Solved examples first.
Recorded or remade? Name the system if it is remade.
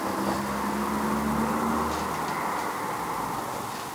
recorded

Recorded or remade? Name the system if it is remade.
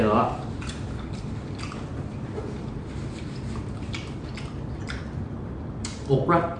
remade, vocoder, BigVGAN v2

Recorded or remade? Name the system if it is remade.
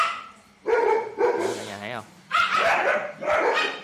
remade, vocoder, BigVGAN v2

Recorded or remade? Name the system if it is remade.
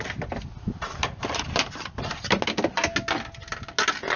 recorded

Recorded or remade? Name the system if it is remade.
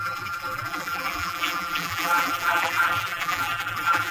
remade, vocoder, BigVGAN v2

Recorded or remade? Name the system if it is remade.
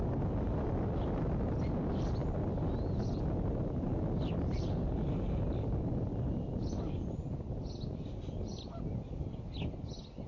recorded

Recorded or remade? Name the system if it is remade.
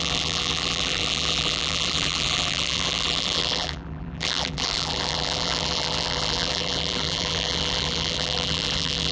remade, vocoder, BigVGAN v2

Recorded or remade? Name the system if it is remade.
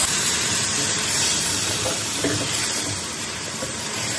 remade, vocoder, BigVGAN v2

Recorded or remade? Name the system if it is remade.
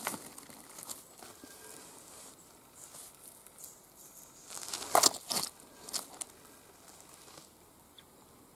recorded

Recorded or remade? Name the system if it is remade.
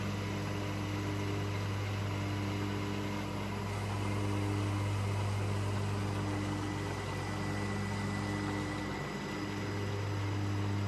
recorded